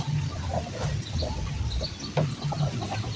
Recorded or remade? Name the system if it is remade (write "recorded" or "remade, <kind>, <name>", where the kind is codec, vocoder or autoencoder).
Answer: recorded